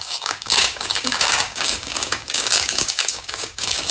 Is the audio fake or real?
fake